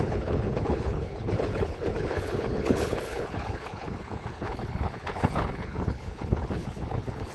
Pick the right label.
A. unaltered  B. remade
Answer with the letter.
B